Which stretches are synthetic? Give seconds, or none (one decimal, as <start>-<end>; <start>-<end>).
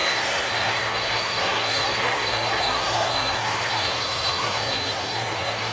0.0-5.7